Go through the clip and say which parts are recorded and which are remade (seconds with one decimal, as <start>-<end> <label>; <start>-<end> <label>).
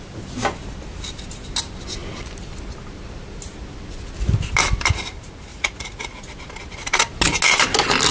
0.0-5.5 recorded; 5.5-6.2 remade; 6.2-8.1 recorded